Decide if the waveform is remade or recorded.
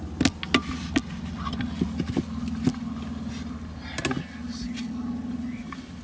recorded